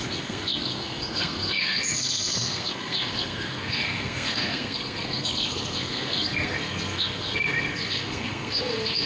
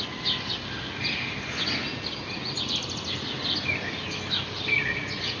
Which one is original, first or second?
second